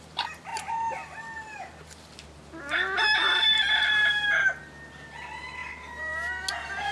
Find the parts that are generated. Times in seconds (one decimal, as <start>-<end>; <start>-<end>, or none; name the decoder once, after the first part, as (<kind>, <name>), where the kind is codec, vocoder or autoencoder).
none